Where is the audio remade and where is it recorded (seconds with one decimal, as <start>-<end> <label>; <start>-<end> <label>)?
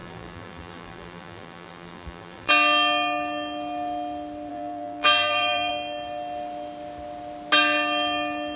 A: 0.0-2.5 remade; 2.5-4.5 recorded; 4.5-5.7 remade; 5.7-8.6 recorded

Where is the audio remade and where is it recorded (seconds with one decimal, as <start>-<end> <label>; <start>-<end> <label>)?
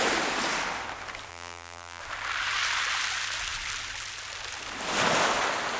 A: 0.0-1.3 recorded; 1.3-2.0 remade; 2.0-5.8 recorded